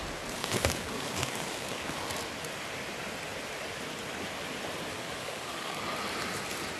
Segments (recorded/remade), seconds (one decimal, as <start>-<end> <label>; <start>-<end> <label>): 0.0-0.4 recorded; 0.4-2.1 remade; 2.1-4.9 recorded; 4.9-5.8 remade; 5.8-6.8 recorded